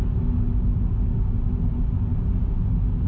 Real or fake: real